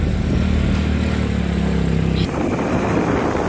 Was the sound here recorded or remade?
recorded